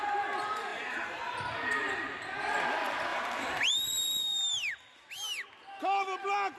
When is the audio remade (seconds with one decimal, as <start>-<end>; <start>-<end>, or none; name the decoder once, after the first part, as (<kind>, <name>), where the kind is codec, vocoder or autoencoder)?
0.7-2.2 (vocoder, BigVGAN v2); 3.1-4.7